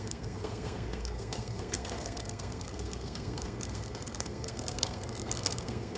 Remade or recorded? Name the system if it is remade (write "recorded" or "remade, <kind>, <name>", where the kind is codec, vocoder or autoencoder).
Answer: remade, codec, SNAC